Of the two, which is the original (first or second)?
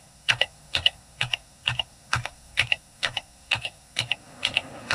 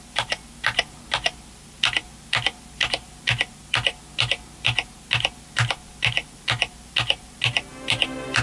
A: second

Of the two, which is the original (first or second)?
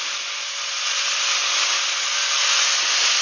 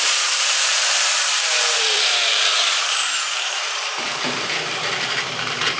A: first